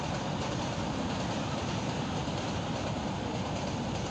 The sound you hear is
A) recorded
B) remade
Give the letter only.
A